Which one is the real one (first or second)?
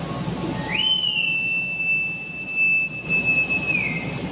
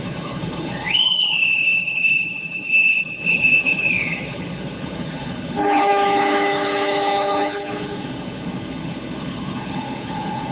first